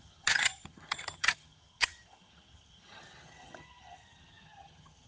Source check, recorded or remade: remade